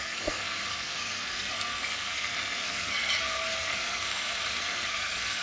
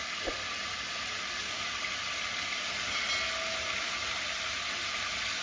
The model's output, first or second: first